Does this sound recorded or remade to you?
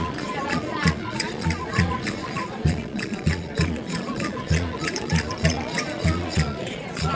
remade